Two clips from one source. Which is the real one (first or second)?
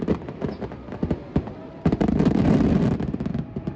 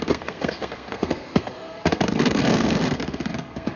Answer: first